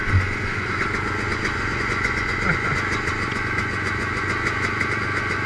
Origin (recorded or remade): remade